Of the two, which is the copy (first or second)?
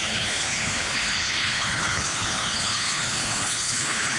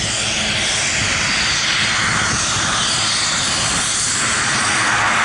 first